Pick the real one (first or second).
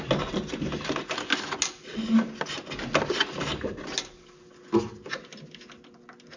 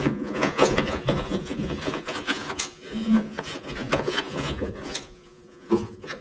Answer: first